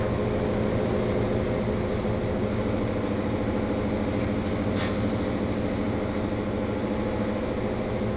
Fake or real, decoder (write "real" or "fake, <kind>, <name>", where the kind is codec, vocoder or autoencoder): real